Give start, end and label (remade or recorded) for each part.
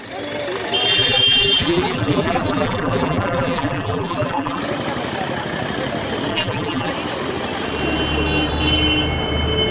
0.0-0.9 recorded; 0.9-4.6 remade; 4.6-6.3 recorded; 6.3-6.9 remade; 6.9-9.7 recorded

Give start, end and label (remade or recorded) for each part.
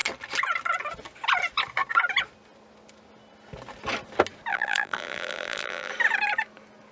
0.0-4.5 recorded; 4.5-5.9 remade; 5.9-6.9 recorded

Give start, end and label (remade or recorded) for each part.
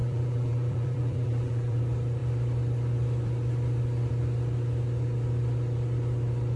0.0-1.8 remade; 1.8-6.6 recorded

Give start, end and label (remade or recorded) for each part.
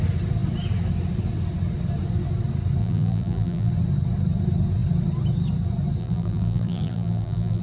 0.0-2.8 recorded; 2.8-3.7 remade; 3.7-6.0 recorded; 6.0-7.6 remade